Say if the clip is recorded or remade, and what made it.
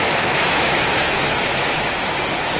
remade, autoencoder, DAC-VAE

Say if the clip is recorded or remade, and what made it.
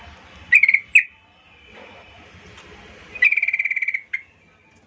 recorded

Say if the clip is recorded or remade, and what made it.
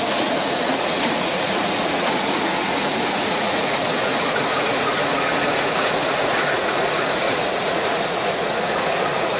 remade, vocoder, Vocos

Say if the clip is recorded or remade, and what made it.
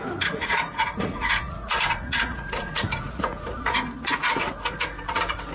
remade, vocoder, Vocos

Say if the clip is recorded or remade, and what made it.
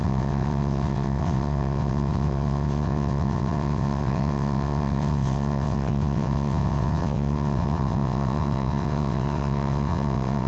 remade, vocoder, WaveNeXt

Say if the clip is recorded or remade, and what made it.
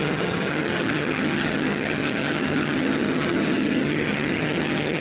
remade, vocoder, HiFi-GAN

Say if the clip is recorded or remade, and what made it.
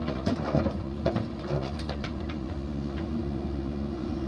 remade, vocoder, Vocos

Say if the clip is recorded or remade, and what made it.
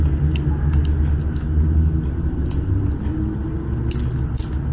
recorded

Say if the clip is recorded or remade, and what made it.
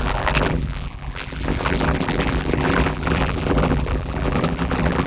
remade, vocoder, BigVGAN v2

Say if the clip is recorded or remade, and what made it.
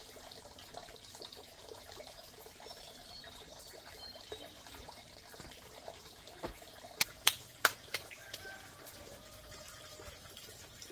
remade, vocoder, BigVGAN v2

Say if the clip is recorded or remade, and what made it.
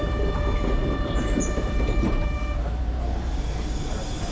remade, vocoder, BigVGAN v2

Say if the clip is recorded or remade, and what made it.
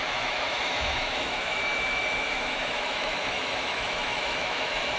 remade, autoencoder, DAC-VAE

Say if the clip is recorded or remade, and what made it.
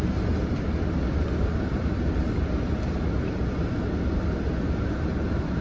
recorded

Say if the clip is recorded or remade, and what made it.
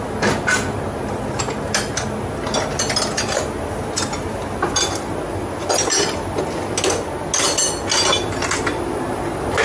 recorded